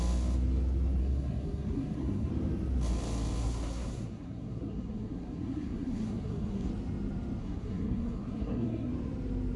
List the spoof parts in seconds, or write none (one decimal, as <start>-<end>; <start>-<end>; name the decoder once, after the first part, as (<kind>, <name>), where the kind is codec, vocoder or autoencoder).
1.0-2.3 (codec, SNAC); 3.4-6.7; 7.4-8.9